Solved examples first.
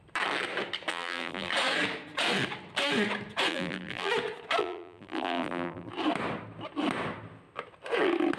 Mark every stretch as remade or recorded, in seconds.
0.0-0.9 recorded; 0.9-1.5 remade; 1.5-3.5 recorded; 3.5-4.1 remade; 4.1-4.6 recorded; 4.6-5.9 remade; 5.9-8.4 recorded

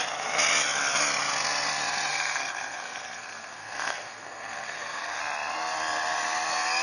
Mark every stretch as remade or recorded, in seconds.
0.0-2.1 recorded; 2.1-5.2 remade; 5.2-6.8 recorded

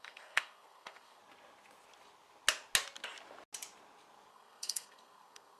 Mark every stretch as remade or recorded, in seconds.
0.0-1.2 remade; 1.2-4.3 recorded; 4.3-5.6 remade

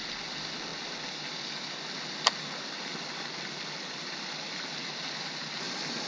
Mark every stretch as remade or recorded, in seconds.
0.0-6.1 recorded

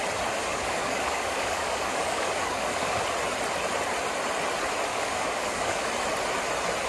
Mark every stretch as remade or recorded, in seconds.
0.0-0.4 recorded; 0.4-3.0 remade; 3.0-4.9 recorded; 4.9-5.9 remade; 5.9-6.9 recorded

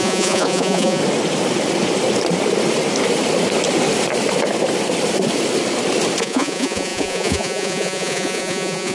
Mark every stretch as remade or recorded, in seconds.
0.0-1.0 remade; 1.0-6.2 recorded; 6.2-8.9 remade

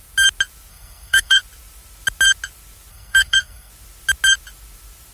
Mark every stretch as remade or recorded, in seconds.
0.0-0.7 recorded; 0.7-1.4 remade; 1.4-2.9 recorded; 2.9-3.7 remade; 3.7-5.1 recorded

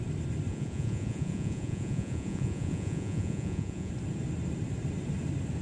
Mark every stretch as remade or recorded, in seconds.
0.0-0.5 recorded; 0.5-3.9 remade; 3.9-5.6 recorded